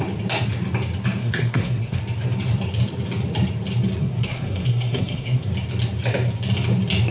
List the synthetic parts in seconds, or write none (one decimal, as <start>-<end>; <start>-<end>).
1.2-2.0; 4.0-5.5